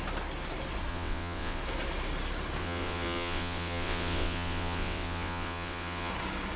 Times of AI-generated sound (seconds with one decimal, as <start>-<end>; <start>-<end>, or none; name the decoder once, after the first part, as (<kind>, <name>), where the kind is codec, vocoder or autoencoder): 0.9-1.6 (vocoder, WaveNeXt); 2.6-6.1